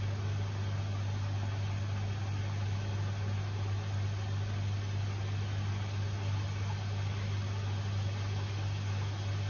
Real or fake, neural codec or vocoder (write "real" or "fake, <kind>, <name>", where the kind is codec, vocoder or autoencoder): real